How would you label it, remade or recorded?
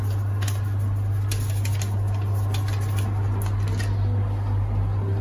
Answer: recorded